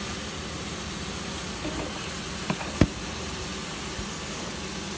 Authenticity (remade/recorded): recorded